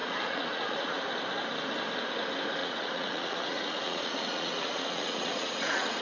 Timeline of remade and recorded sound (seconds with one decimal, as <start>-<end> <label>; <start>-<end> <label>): 0.0-1.0 remade; 1.0-2.6 recorded; 2.6-6.0 remade